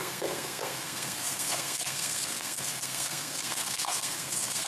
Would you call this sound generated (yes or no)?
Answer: yes